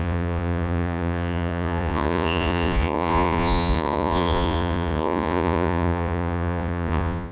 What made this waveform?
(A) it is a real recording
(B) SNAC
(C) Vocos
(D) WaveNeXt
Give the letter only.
C